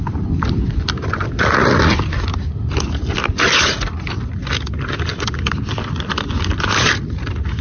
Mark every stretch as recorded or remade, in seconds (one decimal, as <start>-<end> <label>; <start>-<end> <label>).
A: 0.0-7.6 recorded